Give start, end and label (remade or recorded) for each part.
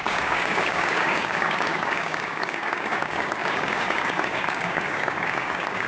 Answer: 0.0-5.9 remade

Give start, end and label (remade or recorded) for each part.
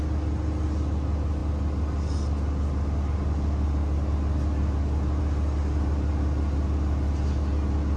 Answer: 0.0-8.0 recorded